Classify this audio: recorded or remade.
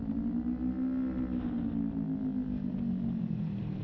recorded